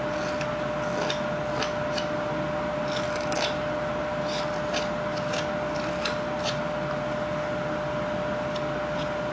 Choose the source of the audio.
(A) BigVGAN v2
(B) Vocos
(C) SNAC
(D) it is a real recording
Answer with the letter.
D